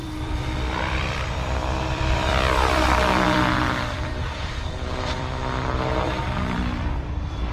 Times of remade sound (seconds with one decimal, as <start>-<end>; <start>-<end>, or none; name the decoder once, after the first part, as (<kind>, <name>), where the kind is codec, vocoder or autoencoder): 0.0-7.5 (vocoder, BigVGAN v2)